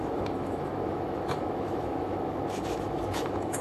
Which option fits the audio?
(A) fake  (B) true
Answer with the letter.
A